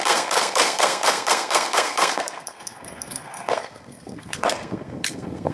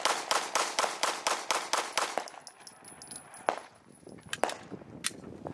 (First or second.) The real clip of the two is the second